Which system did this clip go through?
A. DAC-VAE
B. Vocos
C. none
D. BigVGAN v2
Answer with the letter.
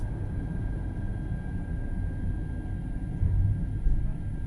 C